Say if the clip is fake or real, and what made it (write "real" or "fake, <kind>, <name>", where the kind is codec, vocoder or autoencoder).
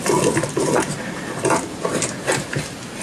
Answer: real